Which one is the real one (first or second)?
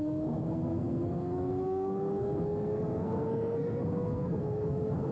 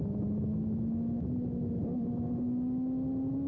second